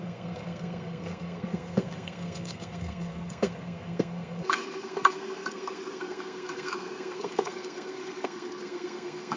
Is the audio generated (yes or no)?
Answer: yes